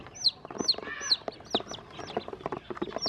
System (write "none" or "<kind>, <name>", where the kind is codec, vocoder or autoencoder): none